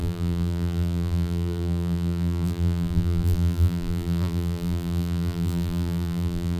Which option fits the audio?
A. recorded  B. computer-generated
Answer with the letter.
B